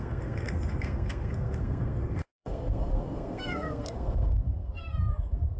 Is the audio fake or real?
fake